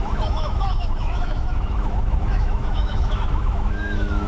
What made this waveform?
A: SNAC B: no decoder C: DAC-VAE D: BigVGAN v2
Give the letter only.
C